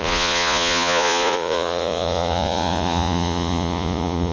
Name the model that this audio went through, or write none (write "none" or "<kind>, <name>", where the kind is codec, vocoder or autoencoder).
vocoder, Vocos